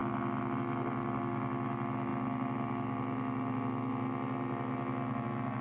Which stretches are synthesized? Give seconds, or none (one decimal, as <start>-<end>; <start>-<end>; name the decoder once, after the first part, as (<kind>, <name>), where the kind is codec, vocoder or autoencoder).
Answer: none